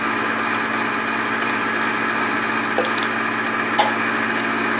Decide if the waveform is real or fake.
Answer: real